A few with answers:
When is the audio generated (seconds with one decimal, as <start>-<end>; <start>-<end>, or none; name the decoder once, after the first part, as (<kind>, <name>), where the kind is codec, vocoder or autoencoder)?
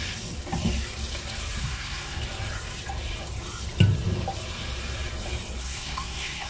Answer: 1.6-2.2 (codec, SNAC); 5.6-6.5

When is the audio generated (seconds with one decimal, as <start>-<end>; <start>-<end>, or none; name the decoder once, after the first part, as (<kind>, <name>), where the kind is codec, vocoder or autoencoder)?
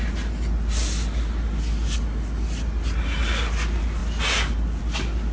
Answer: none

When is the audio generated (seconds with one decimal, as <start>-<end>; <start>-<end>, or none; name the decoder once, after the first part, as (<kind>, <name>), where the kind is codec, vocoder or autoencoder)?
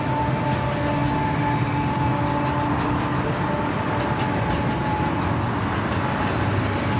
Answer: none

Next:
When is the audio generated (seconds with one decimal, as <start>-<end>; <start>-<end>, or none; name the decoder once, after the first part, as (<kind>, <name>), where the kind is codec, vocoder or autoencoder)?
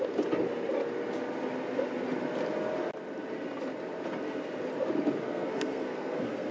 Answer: 5.3-6.5 (codec, SNAC)